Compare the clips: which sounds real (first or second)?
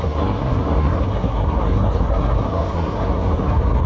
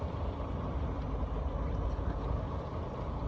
second